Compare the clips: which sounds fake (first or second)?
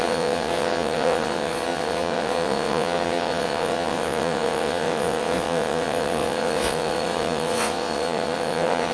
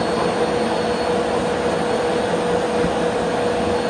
first